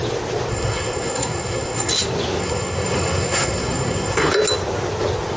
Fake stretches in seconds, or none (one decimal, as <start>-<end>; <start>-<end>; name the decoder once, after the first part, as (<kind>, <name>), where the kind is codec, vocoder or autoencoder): 0.5-1.9 (codec, SNAC); 2.4-4.3